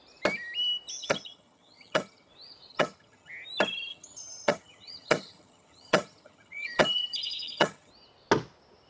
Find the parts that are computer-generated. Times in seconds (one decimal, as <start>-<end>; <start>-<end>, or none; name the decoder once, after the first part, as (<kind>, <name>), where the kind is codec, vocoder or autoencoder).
1.0-2.3 (vocoder, HiFi-GAN); 2.7-3.3; 3.9-7.9

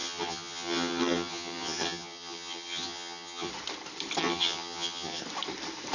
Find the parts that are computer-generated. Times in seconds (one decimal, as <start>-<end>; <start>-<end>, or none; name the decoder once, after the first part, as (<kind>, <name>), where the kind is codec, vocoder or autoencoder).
0.0-3.5 (vocoder, HiFi-GAN); 4.2-5.2

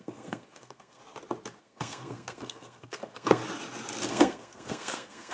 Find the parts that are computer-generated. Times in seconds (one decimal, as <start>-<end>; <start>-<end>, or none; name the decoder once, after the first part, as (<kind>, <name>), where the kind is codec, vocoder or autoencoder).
0.0-1.0 (codec, SNAC); 1.6-3.4; 4.1-5.3

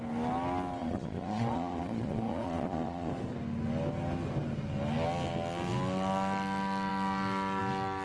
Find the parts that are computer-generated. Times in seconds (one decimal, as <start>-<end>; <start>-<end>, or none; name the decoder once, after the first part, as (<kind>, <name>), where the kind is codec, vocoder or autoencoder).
0.8-3.1 (vocoder, Vocos)

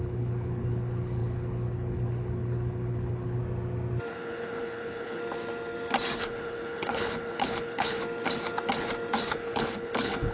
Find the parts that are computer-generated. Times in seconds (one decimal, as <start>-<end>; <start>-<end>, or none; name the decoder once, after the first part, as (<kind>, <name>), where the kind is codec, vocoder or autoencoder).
0.0-3.4 (codec, HILCodec); 4.1-5.2; 6.2-8.0; 9.3-10.3